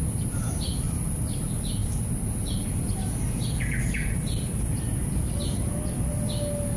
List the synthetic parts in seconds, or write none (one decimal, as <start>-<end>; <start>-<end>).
none

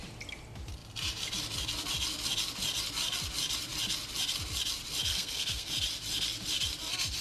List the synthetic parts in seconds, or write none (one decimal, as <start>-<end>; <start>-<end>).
5.1-5.7

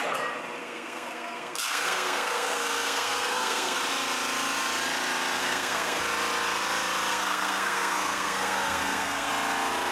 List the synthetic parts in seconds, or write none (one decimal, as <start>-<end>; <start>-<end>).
0.6-3.8; 5.4-6.0; 7.1-9.3